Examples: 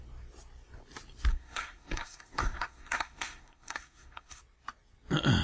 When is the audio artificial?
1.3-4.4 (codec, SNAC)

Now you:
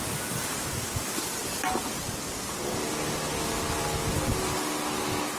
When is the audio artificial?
none